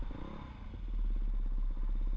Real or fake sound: real